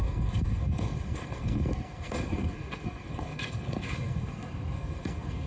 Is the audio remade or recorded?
remade